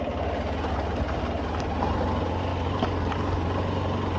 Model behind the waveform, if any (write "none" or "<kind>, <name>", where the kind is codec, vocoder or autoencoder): none